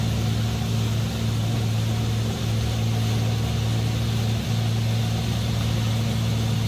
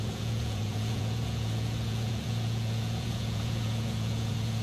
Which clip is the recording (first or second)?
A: first